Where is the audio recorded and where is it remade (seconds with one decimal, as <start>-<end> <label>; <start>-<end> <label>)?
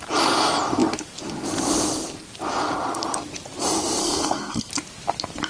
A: 0.0-4.0 recorded; 4.0-4.7 remade; 4.7-5.5 recorded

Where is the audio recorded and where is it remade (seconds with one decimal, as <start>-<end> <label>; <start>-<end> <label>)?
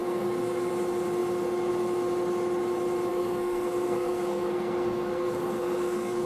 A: 0.0-0.7 remade; 0.7-3.1 recorded; 3.1-6.3 remade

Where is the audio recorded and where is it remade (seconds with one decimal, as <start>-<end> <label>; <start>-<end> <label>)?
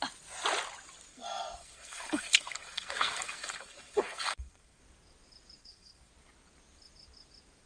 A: 0.0-1.1 recorded; 1.1-4.8 remade; 4.8-5.6 recorded; 5.6-6.1 remade; 6.1-7.7 recorded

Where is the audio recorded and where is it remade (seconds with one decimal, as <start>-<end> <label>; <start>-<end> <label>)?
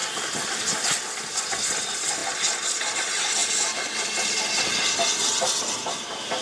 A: 0.0-6.4 recorded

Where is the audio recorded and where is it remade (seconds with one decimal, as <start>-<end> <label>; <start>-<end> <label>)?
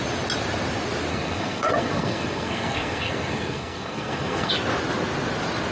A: 0.0-1.1 recorded; 1.1-4.5 remade; 4.5-5.7 recorded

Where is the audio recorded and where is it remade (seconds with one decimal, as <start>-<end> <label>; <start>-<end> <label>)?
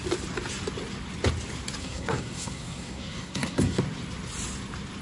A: 0.0-1.8 recorded; 1.8-3.8 remade; 3.8-5.0 recorded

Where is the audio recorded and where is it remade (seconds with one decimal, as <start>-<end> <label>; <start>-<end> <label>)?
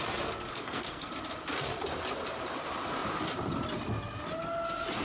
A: 0.0-0.5 recorded; 0.5-1.1 remade; 1.1-5.0 recorded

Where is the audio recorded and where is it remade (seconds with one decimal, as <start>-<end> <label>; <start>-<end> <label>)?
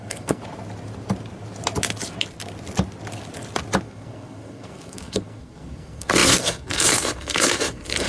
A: 0.0-0.4 remade; 0.4-3.8 recorded; 3.8-8.1 remade